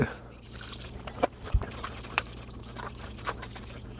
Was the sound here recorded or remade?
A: remade